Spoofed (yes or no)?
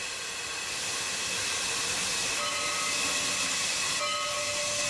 no